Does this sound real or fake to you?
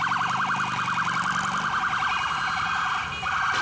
real